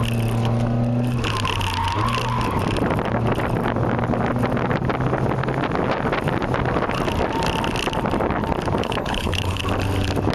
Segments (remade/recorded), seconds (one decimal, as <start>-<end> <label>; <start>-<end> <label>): 0.0-8.8 recorded; 8.8-9.6 remade; 9.6-10.3 recorded